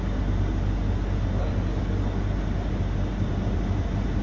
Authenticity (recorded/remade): recorded